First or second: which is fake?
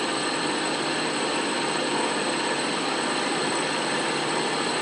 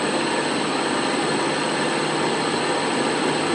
first